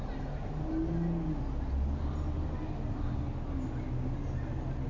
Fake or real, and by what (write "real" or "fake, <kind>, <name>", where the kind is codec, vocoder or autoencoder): real